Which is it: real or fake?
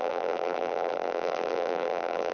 fake